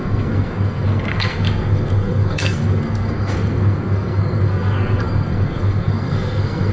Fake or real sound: fake